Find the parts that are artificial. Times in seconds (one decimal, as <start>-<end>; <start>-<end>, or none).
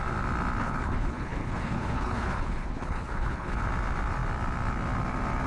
0.6-3.7